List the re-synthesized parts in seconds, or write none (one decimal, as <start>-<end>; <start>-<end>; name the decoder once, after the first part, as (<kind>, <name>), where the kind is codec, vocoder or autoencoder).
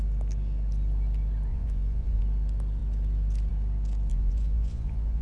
1.5-2.2 (vocoder, Vocos); 4.1-5.2